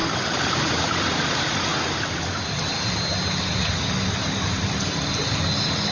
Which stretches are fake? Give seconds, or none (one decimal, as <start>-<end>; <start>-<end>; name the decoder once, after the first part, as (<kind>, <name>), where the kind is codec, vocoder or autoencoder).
none